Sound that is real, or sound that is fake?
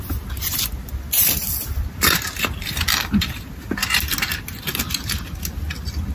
real